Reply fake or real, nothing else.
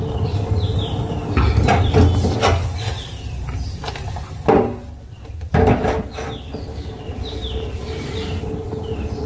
real